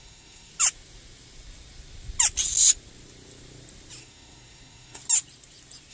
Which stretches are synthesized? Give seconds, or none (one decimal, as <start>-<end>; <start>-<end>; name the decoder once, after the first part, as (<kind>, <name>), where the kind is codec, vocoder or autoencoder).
0.0-0.5 (codec, SNAC); 4.0-5.0